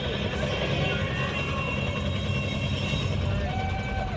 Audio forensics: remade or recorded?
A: recorded